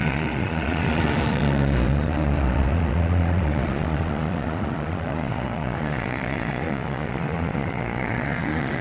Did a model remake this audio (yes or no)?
yes